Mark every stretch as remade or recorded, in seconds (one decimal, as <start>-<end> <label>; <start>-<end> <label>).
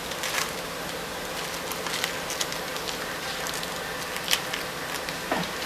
0.0-5.7 recorded